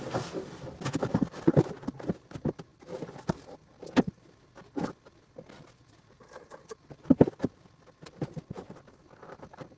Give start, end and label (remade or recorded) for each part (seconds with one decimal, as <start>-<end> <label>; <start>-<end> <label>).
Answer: 0.0-9.8 recorded